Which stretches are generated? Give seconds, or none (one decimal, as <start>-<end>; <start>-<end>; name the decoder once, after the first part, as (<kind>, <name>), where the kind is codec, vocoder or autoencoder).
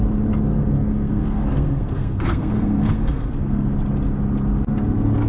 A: 0.5-3.7 (codec, SNAC)